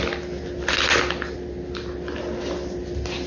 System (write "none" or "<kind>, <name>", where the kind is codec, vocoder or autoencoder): none